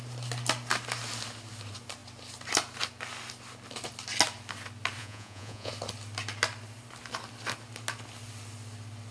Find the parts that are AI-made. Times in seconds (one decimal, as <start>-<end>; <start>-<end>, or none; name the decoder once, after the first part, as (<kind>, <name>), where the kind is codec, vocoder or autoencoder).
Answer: 5.0-5.7 (vocoder, Vocos)